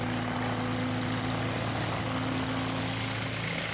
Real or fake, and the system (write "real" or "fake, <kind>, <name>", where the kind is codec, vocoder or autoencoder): real